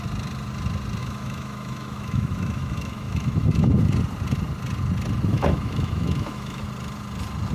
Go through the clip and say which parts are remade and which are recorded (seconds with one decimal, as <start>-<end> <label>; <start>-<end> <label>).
0.0-1.0 recorded; 1.0-3.8 remade; 3.8-5.3 recorded; 5.3-6.6 remade; 6.6-7.5 recorded